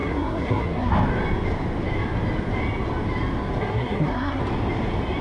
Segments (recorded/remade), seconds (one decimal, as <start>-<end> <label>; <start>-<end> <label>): 0.0-0.9 remade; 0.9-3.6 recorded; 3.6-4.4 remade; 4.4-5.2 recorded